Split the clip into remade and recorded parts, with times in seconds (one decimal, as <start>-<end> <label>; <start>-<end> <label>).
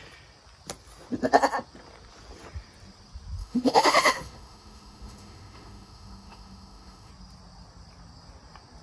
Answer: 0.0-3.4 recorded; 3.4-7.1 remade; 7.1-8.8 recorded